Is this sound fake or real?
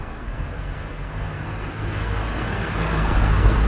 fake